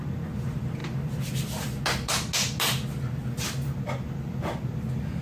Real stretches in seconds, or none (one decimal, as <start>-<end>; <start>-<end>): 0.0-5.2